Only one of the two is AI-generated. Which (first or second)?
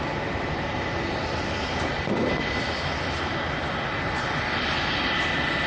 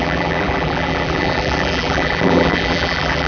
second